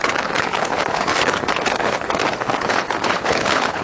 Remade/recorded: remade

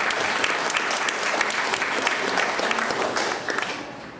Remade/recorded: recorded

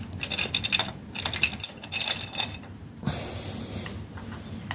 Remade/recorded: recorded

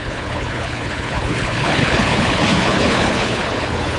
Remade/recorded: remade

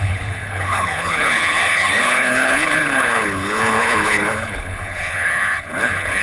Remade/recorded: remade